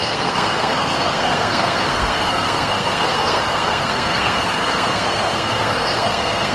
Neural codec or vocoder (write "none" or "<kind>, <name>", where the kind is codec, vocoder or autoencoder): codec, SNAC